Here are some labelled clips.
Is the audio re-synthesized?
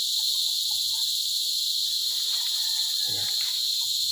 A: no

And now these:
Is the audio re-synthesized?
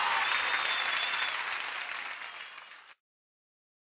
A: no